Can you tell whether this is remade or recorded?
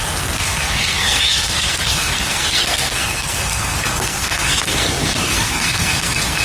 remade